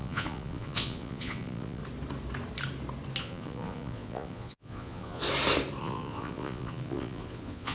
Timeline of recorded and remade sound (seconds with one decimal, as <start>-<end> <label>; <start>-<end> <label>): 0.0-1.8 remade; 1.8-3.2 recorded; 3.2-5.2 remade; 5.2-5.8 recorded; 5.8-7.7 remade